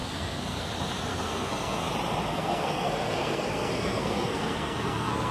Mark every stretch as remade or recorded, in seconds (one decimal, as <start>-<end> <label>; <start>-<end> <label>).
0.0-0.7 remade; 0.7-1.1 recorded; 1.1-1.9 remade; 1.9-2.3 recorded; 2.3-5.3 remade